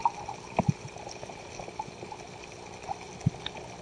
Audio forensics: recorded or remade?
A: recorded